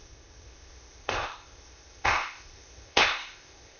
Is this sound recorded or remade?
remade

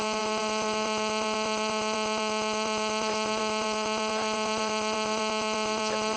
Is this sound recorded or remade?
remade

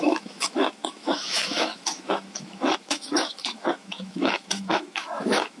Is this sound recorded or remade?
remade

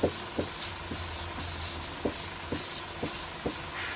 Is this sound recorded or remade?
recorded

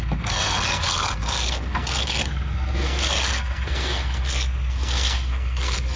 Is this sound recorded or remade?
remade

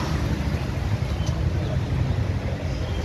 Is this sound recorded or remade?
recorded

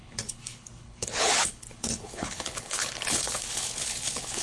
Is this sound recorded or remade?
remade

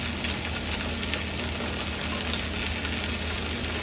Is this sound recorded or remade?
recorded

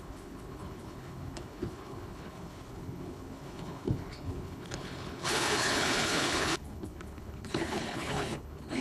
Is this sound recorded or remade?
remade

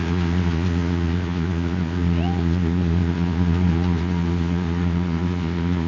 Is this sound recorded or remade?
remade